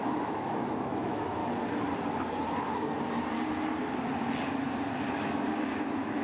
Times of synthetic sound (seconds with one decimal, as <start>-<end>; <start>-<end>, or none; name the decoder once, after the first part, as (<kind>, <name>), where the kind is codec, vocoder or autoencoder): 0.0-1.4 (autoencoder, DAC-VAE); 5.1-6.2